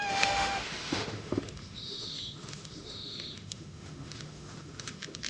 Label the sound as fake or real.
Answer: fake